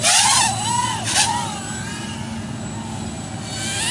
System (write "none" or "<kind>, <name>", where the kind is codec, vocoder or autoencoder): none